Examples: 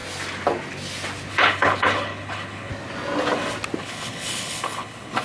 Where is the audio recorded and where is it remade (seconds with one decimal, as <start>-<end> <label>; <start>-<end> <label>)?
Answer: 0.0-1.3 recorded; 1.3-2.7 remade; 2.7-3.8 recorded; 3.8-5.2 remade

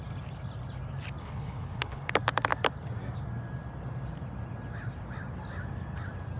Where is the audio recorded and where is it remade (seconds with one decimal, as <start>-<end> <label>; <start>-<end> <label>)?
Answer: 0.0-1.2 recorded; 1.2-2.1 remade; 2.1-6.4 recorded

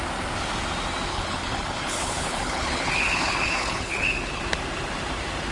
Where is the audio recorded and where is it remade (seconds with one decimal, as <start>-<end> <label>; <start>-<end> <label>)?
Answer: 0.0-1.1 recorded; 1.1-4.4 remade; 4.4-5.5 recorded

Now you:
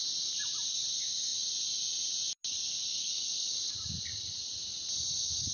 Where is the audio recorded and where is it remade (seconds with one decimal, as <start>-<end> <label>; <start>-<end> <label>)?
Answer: 0.0-2.9 recorded; 2.9-3.6 remade; 3.6-5.5 recorded

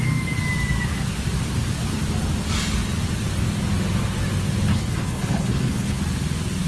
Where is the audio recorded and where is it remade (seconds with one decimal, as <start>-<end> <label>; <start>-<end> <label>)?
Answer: 0.0-4.7 recorded; 4.7-6.0 remade; 6.0-6.7 recorded